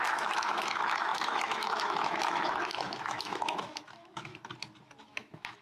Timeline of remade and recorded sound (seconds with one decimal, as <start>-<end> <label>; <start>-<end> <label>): 0.0-4.3 remade; 4.3-5.0 recorded; 5.0-5.6 remade